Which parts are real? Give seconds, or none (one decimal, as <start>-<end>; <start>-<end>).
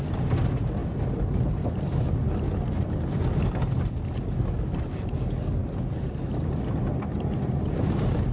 0.0-8.3